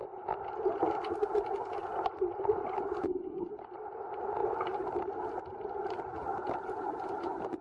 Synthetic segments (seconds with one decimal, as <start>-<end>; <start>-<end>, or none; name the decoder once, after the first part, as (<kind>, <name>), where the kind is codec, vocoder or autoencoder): 4.4-5.4 (vocoder, BigVGAN v2); 6.3-7.6

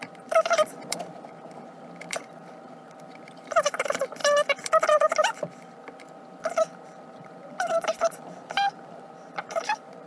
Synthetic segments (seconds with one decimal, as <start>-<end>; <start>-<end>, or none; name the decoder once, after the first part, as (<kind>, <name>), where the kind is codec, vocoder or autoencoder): 0.0-4.2 (vocoder, BigVGAN v2); 4.9-10.1

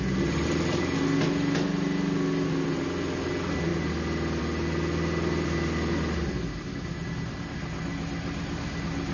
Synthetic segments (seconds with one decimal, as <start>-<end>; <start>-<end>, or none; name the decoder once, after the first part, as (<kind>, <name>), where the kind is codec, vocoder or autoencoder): none

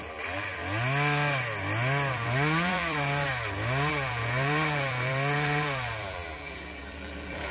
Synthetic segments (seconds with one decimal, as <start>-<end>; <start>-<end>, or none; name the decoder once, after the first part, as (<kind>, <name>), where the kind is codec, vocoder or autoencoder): 0.0-0.6 (vocoder, BigVGAN v2); 2.1-3.3; 3.9-7.5